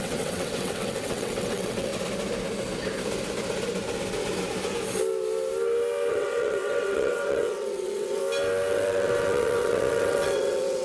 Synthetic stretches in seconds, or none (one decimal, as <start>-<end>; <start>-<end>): 0.0-1.9; 6.1-8.2; 8.7-10.8